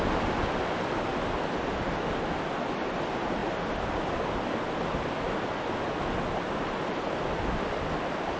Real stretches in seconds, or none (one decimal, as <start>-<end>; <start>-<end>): 0.0-8.4